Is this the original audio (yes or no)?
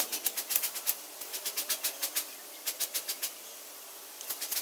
yes